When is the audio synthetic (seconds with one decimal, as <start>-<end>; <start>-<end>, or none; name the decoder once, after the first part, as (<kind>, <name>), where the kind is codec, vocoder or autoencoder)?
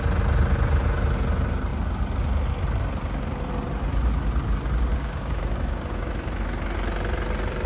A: 4.9-6.1 (codec, DAC)